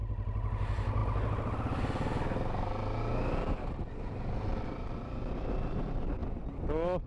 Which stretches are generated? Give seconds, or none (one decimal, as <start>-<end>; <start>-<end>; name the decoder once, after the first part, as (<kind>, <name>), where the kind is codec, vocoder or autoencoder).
none